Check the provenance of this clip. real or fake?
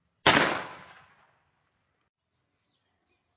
real